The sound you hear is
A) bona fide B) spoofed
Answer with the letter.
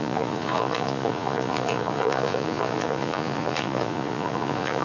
B